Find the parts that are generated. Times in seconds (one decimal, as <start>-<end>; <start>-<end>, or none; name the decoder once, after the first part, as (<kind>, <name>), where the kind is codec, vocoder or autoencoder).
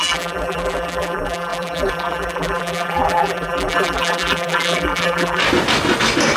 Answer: 0.0-5.4 (vocoder, BigVGAN v2)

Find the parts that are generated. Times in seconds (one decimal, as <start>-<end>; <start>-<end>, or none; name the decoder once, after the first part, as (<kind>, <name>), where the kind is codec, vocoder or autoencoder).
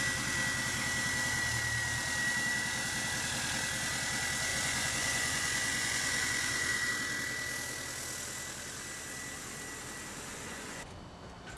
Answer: 4.5-6.9 (vocoder, Vocos); 10.3-10.9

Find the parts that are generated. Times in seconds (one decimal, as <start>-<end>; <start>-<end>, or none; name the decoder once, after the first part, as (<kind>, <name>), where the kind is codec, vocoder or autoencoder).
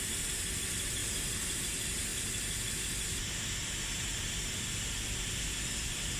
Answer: 0.0-1.0 (vocoder, BigVGAN v2); 1.6-2.1; 4.9-6.2